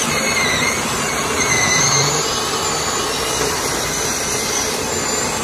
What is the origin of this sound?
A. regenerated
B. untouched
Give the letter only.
B